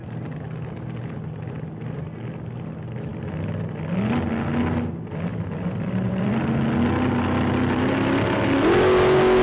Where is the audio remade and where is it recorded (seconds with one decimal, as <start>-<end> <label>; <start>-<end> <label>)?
0.0-5.3 recorded; 5.3-6.3 remade; 6.3-9.4 recorded